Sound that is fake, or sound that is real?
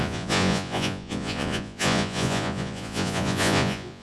fake